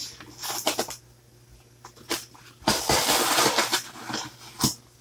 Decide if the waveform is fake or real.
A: real